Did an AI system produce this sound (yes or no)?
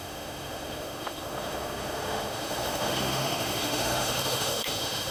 yes